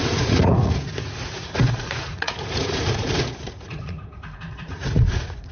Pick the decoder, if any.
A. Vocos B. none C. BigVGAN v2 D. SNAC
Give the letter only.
A